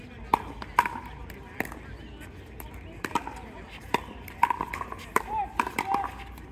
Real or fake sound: real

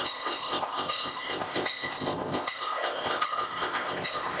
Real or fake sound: fake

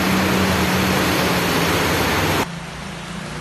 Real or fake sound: real